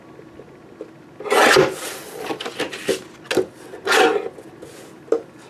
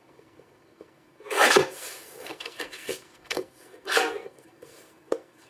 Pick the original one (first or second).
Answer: first